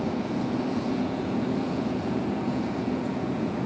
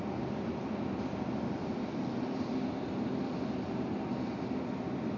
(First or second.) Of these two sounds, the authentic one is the second